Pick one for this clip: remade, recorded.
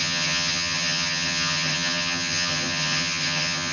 remade